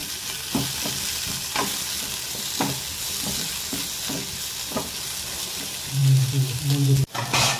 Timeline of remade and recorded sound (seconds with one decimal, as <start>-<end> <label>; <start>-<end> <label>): 0.0-0.9 remade; 0.9-7.6 recorded